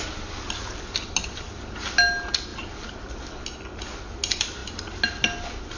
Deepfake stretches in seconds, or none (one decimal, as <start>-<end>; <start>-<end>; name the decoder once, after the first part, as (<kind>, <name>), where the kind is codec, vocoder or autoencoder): none